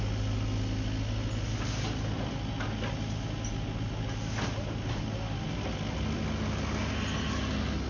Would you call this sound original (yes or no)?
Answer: yes